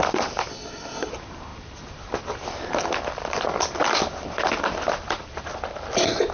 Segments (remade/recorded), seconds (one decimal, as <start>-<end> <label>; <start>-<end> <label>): 0.0-0.5 recorded; 0.5-1.1 remade; 1.1-6.3 recorded